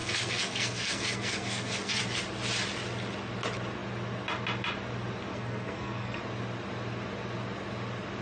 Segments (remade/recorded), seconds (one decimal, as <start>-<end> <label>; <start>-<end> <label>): 0.0-2.0 remade; 2.0-5.3 recorded; 5.3-6.2 remade; 6.2-8.2 recorded